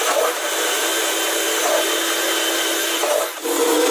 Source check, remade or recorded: recorded